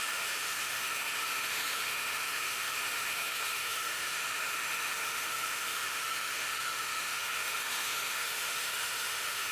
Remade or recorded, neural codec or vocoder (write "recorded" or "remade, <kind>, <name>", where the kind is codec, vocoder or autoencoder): remade, autoencoder, DAC-VAE